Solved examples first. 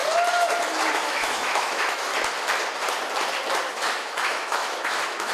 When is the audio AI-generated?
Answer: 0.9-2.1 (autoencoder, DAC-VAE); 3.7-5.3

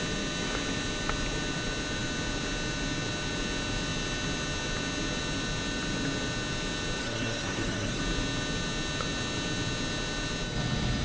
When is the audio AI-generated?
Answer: 7.0-8.0 (codec, SNAC)

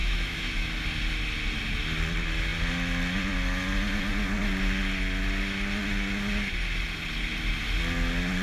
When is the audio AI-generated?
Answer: 0.0-0.7 (autoencoder, DAC-VAE)

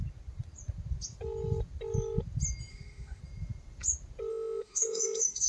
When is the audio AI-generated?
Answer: 2.7-3.2 (autoencoder, DAC-VAE); 4.3-5.5

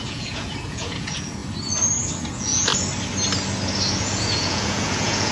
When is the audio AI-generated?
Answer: 0.0-1.4 (vocoder, Vocos); 2.3-2.7; 4.0-5.3

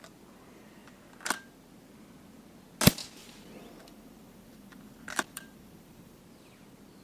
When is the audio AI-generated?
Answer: 3.2-6.2 (vocoder, BigVGAN v2)

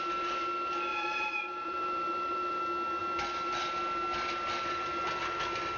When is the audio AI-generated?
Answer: 0.9-2.6 (vocoder, BigVGAN v2)

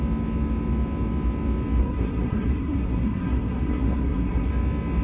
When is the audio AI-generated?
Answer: 1.8-4.5 (codec, SNAC)